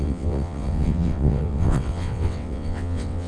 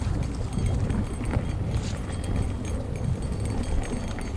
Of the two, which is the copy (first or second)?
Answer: first